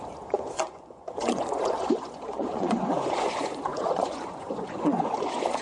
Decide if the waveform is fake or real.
fake